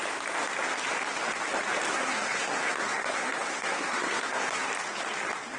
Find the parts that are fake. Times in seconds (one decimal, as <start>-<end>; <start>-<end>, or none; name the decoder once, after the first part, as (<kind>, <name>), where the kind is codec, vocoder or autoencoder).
1.9-4.7 (codec, SNAC)